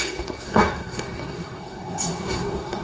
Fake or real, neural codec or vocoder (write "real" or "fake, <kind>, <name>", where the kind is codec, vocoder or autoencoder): fake, codec, SNAC